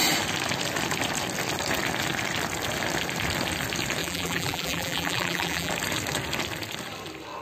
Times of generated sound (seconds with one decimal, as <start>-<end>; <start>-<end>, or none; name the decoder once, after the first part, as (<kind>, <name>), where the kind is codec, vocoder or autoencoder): 4.0-5.7 (vocoder, BigVGAN v2)